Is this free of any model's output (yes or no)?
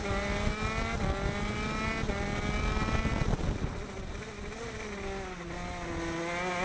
yes